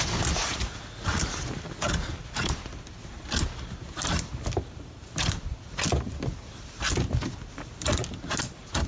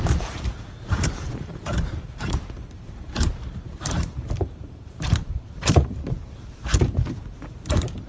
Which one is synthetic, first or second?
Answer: second